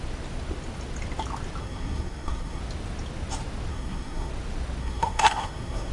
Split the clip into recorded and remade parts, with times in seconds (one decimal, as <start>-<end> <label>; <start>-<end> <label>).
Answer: 0.0-1.6 recorded; 1.6-2.6 remade; 2.6-3.7 recorded; 3.7-4.3 remade; 4.3-4.8 recorded; 4.8-5.9 remade